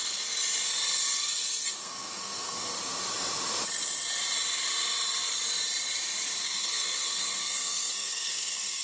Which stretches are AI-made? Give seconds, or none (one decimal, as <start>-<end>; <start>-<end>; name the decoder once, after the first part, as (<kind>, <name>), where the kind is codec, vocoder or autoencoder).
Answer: 1.7-2.7 (codec, SNAC); 6.4-8.8